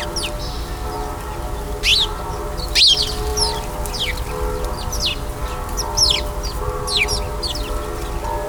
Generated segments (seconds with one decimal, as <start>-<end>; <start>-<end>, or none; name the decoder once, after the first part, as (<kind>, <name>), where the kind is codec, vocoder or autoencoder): none